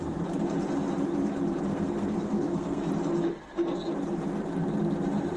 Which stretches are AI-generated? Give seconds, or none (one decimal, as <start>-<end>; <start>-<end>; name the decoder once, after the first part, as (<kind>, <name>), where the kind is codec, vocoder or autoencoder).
1.7-2.9 (codec, SNAC)